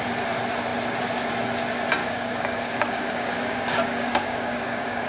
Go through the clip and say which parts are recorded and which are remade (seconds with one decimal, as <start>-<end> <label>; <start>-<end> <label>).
0.0-2.0 recorded; 2.0-5.1 remade